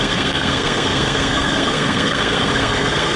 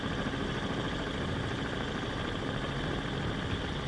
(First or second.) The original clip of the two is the second